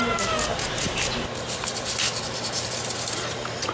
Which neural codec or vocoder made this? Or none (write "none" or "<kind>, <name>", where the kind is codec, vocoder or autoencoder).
none